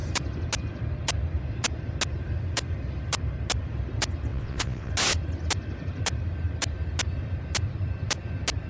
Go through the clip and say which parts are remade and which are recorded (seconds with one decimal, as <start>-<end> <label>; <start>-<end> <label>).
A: 0.0-4.3 recorded; 4.3-4.9 remade; 4.9-8.7 recorded